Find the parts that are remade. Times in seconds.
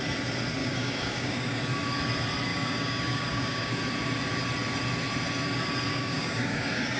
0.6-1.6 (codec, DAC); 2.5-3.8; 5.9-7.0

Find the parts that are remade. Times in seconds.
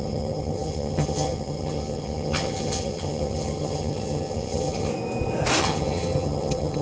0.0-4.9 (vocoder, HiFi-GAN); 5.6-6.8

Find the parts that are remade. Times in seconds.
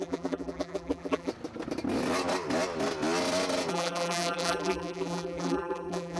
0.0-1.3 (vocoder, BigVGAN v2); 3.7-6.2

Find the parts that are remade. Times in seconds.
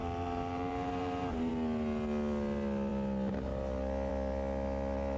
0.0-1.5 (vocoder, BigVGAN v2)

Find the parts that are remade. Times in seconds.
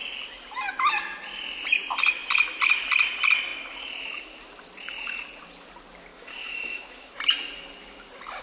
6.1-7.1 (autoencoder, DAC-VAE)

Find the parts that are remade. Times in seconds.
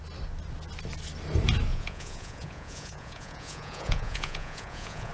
1.7-5.1 (vocoder, Vocos)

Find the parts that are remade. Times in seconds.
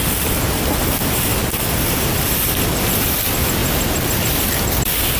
0.8-1.3 (vocoder, BigVGAN v2); 2.0-3.6; 4.4-5.2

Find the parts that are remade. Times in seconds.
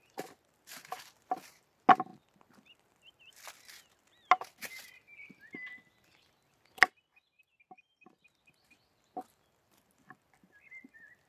none